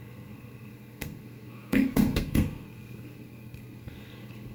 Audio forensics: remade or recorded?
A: remade